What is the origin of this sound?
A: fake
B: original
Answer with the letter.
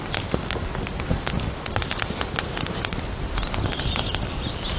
A